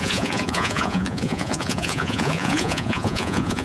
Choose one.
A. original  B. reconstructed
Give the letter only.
B